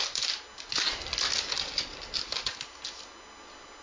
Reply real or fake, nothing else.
real